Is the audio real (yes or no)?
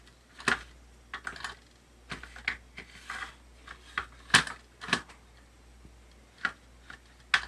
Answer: yes